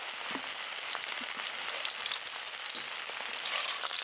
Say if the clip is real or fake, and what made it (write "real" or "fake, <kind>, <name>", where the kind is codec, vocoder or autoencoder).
real